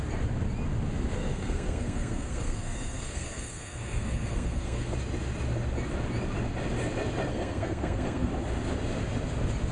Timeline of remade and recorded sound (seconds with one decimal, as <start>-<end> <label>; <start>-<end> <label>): 0.0-1.3 recorded; 1.3-4.9 remade; 4.9-7.3 recorded; 7.3-8.3 remade; 8.3-9.7 recorded